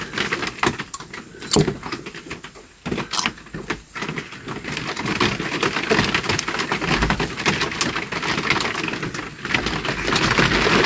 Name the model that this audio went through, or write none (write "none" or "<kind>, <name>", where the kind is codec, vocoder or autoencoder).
none